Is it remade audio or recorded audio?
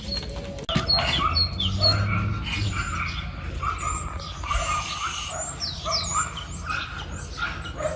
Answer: recorded